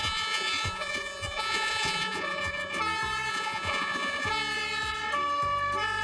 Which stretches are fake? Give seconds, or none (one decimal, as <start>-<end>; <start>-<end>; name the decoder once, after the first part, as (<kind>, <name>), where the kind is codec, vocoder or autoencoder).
0.0-2.8 (vocoder, Vocos); 3.3-4.3